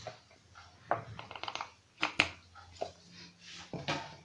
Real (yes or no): yes